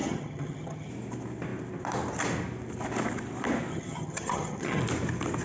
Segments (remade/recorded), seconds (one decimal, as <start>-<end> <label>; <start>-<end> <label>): 0.0-0.9 remade; 0.9-3.7 recorded; 3.7-4.8 remade; 4.8-5.4 recorded